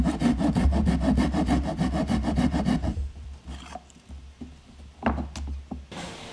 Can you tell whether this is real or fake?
real